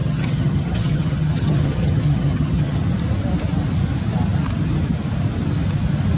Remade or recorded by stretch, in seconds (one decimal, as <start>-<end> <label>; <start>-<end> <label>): 0.0-2.8 remade; 2.8-6.2 recorded